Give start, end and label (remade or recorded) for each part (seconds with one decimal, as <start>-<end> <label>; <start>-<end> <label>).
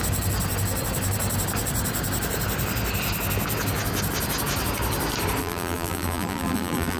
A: 0.0-5.4 recorded; 5.4-7.0 remade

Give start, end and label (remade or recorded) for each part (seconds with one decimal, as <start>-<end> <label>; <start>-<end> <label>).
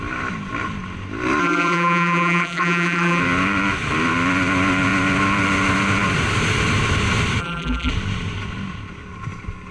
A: 0.0-1.4 recorded; 1.4-3.2 remade; 3.2-7.4 recorded; 7.4-7.9 remade; 7.9-9.7 recorded